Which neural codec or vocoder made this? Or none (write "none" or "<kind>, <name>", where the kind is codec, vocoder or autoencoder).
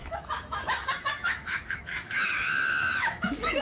autoencoder, DAC-VAE